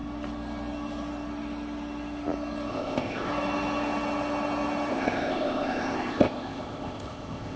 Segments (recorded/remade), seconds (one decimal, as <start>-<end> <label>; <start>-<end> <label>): 0.0-2.7 recorded; 2.7-3.3 remade; 3.3-4.9 recorded; 4.9-7.6 remade